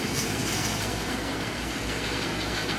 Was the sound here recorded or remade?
remade